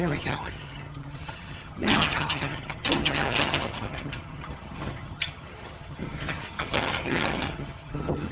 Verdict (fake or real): fake